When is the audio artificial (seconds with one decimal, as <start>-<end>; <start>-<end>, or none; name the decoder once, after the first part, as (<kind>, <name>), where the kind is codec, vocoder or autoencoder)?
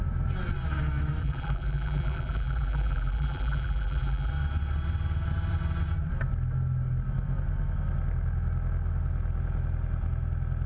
1.2-4.3 (vocoder, BigVGAN v2)